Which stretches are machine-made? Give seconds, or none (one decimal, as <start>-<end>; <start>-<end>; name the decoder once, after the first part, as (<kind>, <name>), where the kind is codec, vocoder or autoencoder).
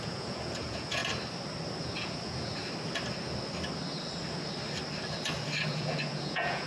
0.0-1.0 (vocoder, Vocos); 1.8-2.6; 5.7-6.7